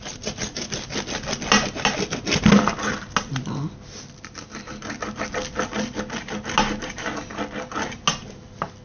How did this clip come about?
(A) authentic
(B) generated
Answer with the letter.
A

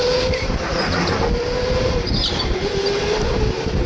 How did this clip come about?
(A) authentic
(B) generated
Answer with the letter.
A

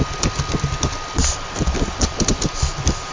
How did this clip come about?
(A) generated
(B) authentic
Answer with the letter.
B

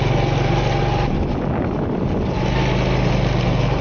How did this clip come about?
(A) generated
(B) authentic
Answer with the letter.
B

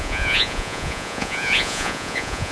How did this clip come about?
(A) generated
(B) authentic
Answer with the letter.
A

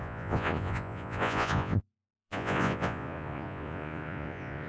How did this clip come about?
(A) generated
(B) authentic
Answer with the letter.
A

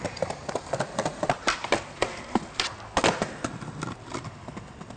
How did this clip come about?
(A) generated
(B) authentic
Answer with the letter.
B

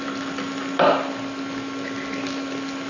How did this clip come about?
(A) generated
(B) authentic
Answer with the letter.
B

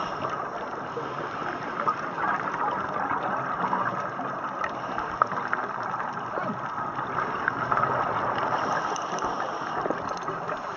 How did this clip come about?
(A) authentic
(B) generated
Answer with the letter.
A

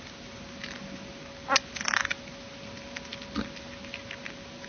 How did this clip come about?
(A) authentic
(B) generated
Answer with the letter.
A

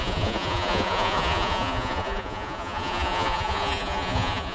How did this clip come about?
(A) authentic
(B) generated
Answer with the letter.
B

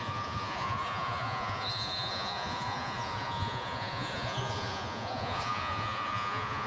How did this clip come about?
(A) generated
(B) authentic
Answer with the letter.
A